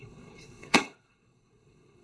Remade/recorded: remade